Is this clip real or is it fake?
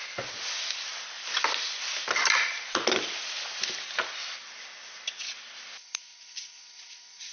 real